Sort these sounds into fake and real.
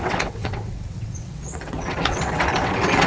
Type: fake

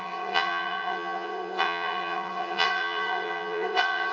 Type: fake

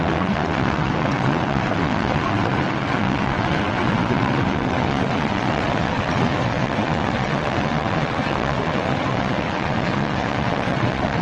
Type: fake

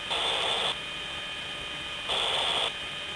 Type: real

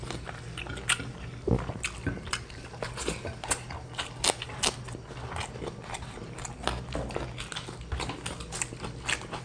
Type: real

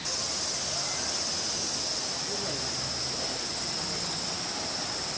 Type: real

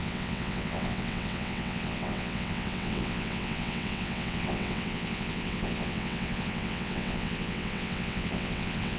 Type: fake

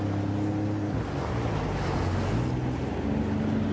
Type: real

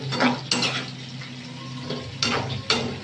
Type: real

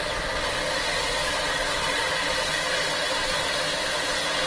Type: real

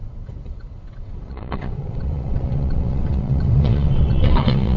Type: fake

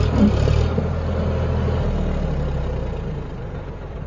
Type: real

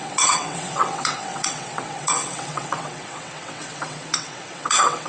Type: fake